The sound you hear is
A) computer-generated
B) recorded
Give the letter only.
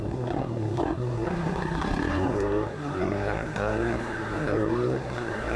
A